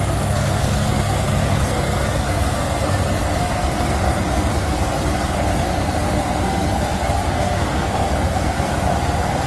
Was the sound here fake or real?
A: fake